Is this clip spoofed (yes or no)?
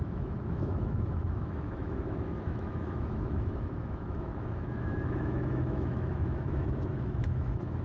yes